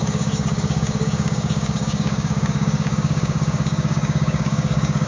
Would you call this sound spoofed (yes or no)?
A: yes